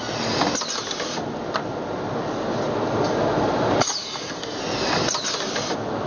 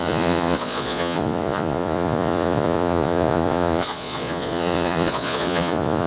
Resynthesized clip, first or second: second